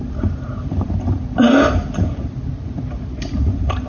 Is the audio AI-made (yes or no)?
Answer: no